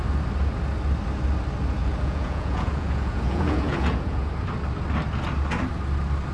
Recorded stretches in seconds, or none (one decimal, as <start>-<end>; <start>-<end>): 0.0-1.8; 4.3-6.3